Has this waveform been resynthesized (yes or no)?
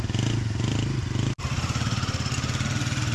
no